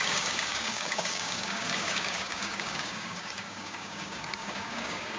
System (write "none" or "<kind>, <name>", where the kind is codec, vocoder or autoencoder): codec, DAC